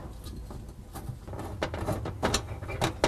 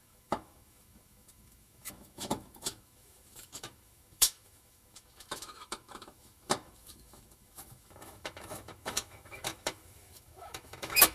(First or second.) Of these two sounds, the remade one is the second